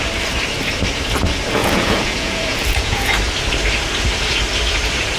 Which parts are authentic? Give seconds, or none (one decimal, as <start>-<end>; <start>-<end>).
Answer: 0.0-1.6; 3.1-5.2